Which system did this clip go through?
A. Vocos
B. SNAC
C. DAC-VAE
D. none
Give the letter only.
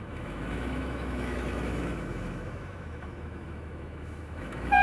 C